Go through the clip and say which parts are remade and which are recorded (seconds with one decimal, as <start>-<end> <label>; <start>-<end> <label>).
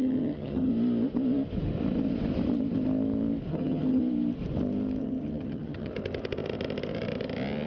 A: 0.0-0.7 remade; 0.7-3.5 recorded; 3.5-4.0 remade; 4.0-5.0 recorded; 5.0-5.9 remade; 5.9-7.7 recorded